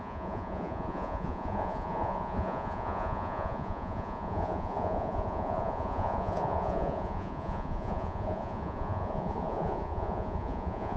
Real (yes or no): no